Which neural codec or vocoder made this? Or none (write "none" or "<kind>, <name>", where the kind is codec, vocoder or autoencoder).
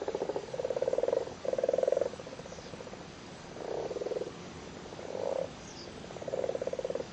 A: codec, DAC